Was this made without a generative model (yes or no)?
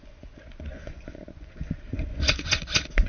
no